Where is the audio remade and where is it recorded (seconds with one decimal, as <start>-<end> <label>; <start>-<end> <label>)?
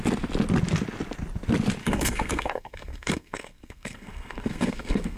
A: 0.0-1.8 recorded; 1.8-5.2 remade